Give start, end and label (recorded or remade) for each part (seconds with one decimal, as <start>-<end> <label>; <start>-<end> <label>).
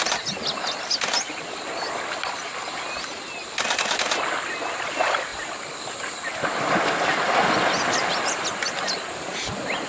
0.0-9.9 recorded